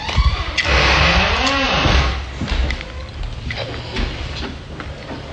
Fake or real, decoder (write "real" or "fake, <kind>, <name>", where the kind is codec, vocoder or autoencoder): real